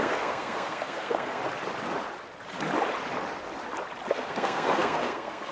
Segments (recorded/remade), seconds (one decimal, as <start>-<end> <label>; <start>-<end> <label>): 0.0-1.4 remade; 1.4-4.1 recorded; 4.1-5.5 remade